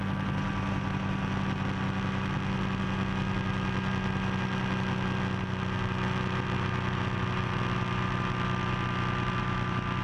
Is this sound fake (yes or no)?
no